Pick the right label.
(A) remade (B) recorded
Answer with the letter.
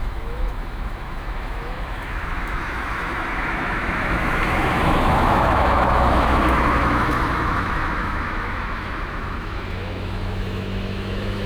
A